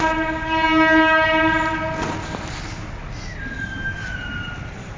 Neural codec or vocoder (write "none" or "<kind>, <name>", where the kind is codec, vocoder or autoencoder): none